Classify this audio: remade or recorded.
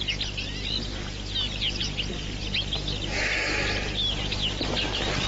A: recorded